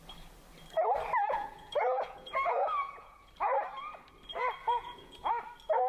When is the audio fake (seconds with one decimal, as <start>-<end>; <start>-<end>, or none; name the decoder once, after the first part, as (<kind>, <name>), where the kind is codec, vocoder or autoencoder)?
1.2-3.3 (vocoder, Vocos); 4.6-5.3

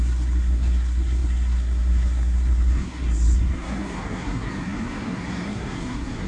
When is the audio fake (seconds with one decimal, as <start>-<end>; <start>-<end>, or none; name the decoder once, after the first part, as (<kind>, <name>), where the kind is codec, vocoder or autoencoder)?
0.0-6.3 (codec, SNAC)

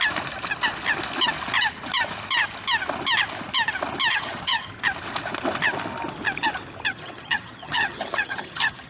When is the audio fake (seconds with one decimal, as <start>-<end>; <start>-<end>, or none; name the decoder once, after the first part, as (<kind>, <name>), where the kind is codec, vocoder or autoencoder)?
4.1-4.7 (vocoder, HiFi-GAN); 6.9-8.9

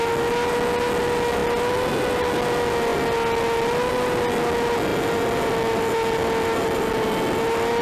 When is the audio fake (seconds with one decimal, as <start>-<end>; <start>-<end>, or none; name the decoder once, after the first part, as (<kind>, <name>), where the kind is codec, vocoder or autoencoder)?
none

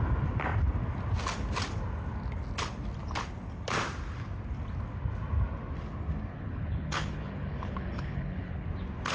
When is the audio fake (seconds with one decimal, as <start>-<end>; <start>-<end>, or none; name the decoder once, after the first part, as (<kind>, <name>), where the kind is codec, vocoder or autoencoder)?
6.3-8.7 (codec, HILCodec)

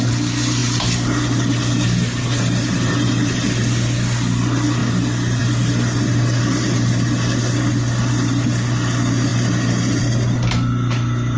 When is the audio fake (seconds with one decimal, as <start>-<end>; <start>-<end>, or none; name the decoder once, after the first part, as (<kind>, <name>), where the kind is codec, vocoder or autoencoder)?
none